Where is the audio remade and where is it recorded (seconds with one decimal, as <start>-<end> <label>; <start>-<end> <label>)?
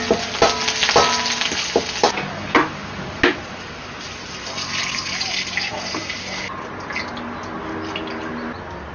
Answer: 0.0-8.9 recorded